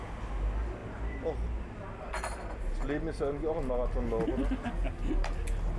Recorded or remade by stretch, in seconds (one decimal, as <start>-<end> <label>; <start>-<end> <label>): 0.0-5.8 recorded